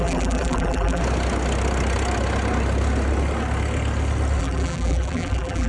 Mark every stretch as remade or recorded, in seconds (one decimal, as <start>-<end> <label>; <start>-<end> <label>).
0.0-1.0 remade; 1.0-4.4 recorded; 4.4-5.7 remade

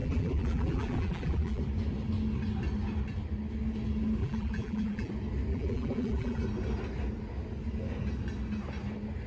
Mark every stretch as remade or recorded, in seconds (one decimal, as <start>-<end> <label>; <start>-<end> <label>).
0.0-1.6 remade; 1.6-4.2 recorded; 4.2-5.1 remade; 5.1-5.5 recorded; 5.5-6.4 remade; 6.4-9.3 recorded

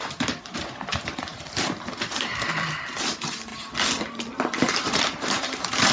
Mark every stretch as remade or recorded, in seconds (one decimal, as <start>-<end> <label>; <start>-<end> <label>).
0.0-3.5 remade; 3.5-5.0 recorded; 5.0-5.9 remade

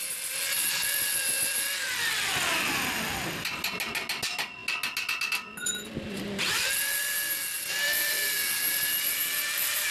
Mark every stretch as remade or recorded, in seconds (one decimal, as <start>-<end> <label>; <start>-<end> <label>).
0.0-9.9 recorded